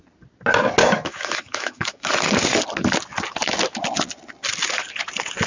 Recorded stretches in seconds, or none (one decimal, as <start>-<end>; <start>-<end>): 0.0-0.8; 2.1-5.5